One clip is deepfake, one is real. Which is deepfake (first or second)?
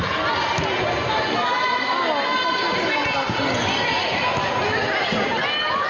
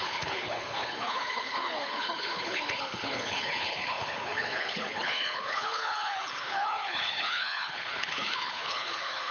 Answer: second